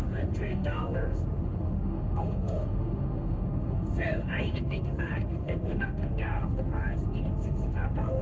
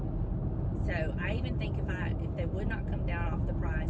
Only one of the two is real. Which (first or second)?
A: second